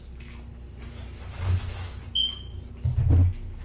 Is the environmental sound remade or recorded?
recorded